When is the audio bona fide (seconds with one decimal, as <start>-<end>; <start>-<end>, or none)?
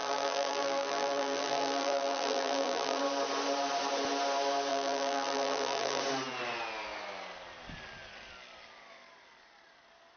3.0-4.7; 6.0-10.2